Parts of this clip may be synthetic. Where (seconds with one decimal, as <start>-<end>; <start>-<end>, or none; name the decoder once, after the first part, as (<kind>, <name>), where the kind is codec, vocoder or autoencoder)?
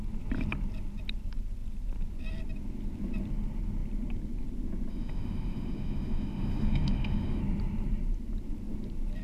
4.9-7.4 (autoencoder, DAC-VAE)